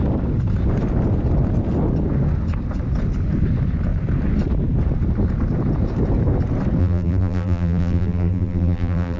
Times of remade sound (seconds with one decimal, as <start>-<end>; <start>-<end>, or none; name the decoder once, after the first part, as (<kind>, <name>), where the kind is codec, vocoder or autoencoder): 6.8-9.2 (vocoder, BigVGAN v2)